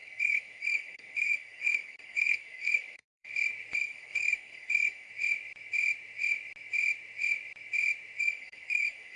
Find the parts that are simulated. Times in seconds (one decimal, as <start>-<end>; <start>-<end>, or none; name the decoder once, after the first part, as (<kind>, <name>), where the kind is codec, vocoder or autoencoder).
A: 0.0-3.3 (codec, SNAC); 3.8-5.1; 8.2-9.2